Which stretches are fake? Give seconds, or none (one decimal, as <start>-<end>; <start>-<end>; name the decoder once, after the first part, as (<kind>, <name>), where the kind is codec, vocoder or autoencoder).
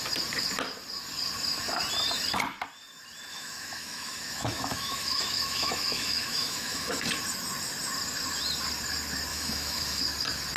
3.3-7.0 (autoencoder, DAC-VAE); 9.3-10.0